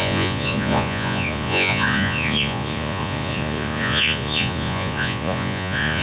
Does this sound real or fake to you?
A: fake